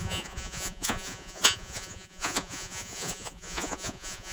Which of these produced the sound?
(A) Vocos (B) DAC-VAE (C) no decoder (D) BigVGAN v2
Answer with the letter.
A